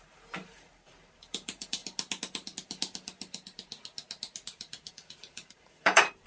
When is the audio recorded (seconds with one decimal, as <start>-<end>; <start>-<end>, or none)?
1.8-4.9